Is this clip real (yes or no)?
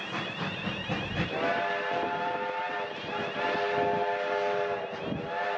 yes